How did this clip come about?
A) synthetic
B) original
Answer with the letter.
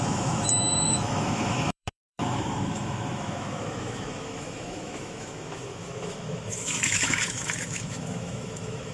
A